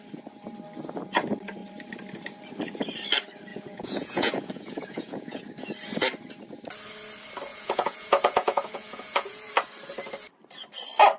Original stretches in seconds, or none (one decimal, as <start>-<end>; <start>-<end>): 0.0-3.5; 5.4-7.5; 9.5-11.2